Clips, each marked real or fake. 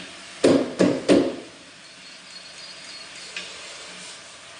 real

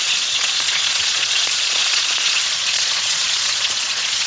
fake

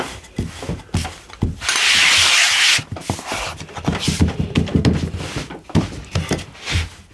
real